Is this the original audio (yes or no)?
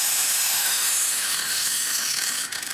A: no